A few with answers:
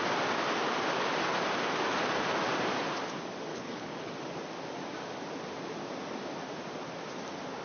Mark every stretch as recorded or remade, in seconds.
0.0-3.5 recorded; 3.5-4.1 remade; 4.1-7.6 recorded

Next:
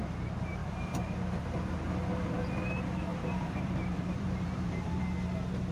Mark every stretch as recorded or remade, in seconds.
0.0-0.6 recorded; 0.6-1.7 remade; 1.7-3.1 recorded; 3.1-5.0 remade; 5.0-5.7 recorded